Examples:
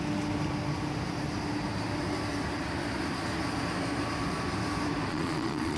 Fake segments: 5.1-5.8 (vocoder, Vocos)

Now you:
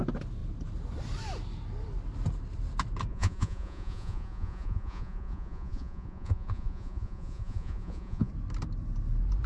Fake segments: 3.1-8.3 (vocoder, Vocos)